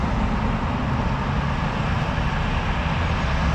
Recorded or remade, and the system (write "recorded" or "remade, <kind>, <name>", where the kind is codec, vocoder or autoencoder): recorded